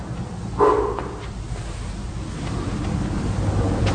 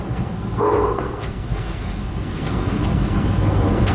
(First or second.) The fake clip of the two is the second